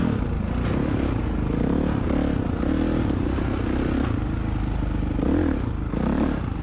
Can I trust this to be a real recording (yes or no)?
yes